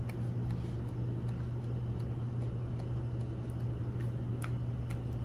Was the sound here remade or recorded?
recorded